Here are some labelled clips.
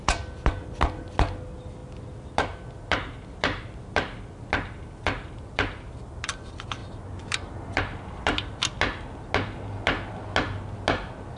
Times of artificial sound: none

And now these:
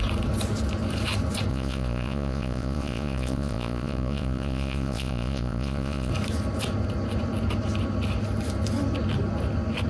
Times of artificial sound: 1.5-6.1 (vocoder, Vocos)

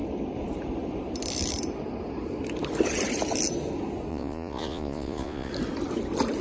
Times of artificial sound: 4.1-5.5 (vocoder, Vocos)

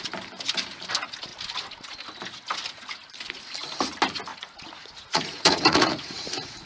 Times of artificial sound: 4.3-6.7 (vocoder, Vocos)

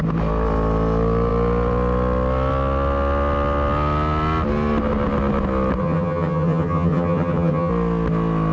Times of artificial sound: 5.8-7.7 (vocoder, HiFi-GAN)

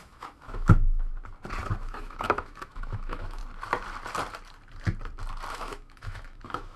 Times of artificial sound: 0.0-1.1 (autoencoder, DAC-VAE); 1.8-3.4; 5.5-6.8

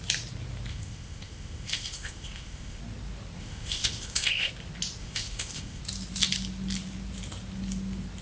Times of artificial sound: 0.7-2.8 (codec, ZipCodec); 3.4-4.5; 5.0-5.8